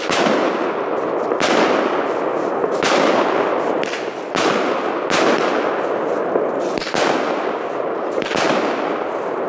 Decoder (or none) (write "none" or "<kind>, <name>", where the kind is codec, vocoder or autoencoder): none